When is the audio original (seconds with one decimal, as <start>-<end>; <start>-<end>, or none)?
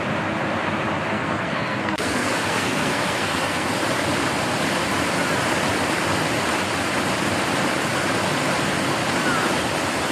0.0-1.1; 3.7-10.1